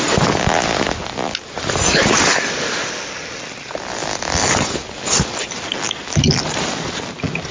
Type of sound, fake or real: real